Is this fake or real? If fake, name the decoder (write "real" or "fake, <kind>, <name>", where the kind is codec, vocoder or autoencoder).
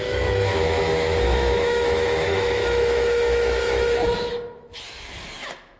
fake, autoencoder, DAC-VAE